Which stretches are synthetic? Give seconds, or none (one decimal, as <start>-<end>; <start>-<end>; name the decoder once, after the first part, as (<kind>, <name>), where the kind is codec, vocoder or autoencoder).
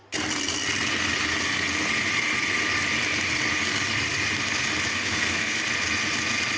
4.9-5.6 (codec, SNAC)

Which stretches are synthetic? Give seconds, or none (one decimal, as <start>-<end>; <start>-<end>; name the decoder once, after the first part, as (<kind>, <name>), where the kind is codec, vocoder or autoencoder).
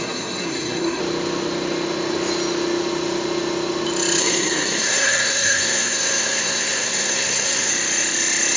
0.0-1.0 (codec, SNAC); 4.2-7.7